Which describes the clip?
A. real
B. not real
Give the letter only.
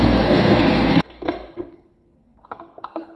B